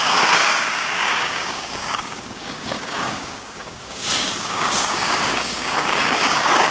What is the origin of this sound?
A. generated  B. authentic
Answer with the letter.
A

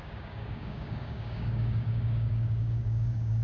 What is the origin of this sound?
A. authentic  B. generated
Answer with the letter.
B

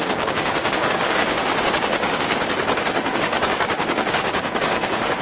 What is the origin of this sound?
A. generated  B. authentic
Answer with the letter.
A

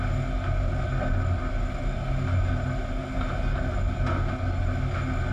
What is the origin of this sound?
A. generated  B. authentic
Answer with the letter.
B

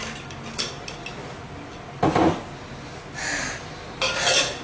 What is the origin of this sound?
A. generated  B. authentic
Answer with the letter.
B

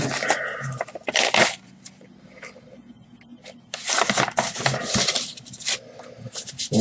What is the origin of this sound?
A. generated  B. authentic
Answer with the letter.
B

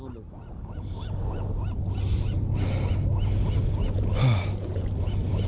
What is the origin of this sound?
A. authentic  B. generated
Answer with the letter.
A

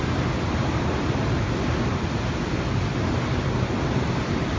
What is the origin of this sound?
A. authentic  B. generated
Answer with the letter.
A